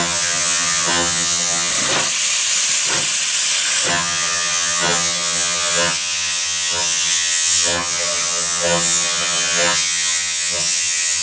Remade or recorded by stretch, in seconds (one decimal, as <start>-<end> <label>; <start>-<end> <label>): 0.0-1.7 remade; 1.7-3.9 recorded; 3.9-11.2 remade